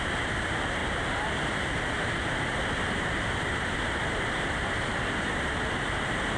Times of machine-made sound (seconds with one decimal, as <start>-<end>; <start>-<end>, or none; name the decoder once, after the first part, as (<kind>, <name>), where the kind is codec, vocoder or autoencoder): none